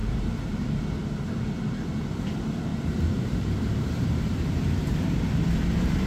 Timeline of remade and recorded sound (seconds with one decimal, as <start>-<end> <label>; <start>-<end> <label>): 0.0-0.5 remade; 0.5-2.7 recorded; 2.7-5.2 remade; 5.2-6.1 recorded